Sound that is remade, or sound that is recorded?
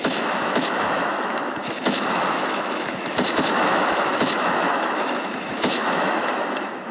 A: remade